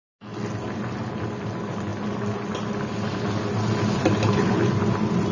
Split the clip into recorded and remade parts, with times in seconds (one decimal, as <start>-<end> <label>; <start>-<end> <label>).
0.0-5.3 recorded